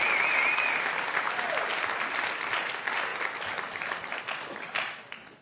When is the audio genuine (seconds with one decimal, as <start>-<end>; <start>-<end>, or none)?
0.0-0.5; 1.1-3.1; 4.2-5.4